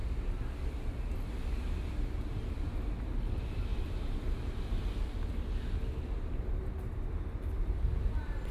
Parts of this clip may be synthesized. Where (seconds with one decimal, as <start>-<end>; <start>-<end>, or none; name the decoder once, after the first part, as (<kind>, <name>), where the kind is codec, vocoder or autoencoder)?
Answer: 3.7-5.0 (vocoder, BigVGAN v2)